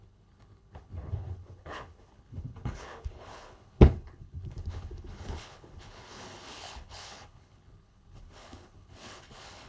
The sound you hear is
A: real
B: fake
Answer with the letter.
B